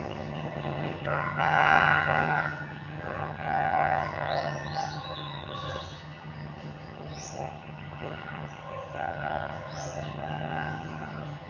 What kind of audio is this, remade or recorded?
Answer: remade